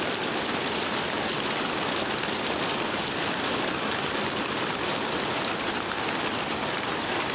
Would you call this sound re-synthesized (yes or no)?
yes